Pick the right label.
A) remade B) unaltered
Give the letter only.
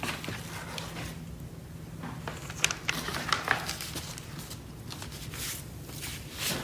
B